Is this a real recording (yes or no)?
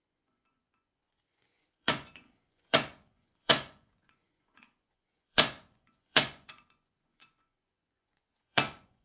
no